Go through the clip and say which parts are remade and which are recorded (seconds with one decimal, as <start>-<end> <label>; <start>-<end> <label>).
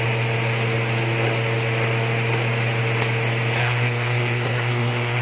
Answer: 0.0-3.6 recorded; 3.6-5.2 remade